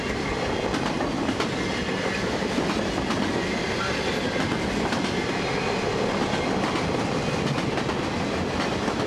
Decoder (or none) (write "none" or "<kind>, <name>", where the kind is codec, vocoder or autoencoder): none